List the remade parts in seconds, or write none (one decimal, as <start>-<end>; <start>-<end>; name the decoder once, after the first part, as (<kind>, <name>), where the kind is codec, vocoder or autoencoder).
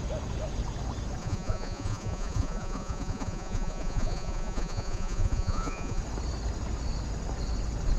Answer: 1.2-6.0 (vocoder, Vocos)